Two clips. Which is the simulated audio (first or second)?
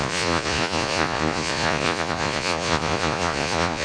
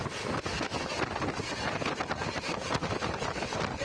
first